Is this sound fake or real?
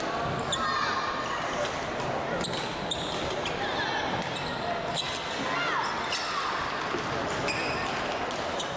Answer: real